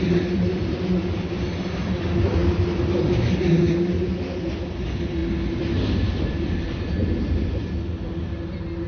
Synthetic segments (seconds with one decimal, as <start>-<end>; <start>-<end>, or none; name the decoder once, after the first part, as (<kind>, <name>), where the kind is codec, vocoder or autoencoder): none